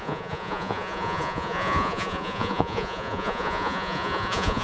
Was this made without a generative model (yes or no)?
no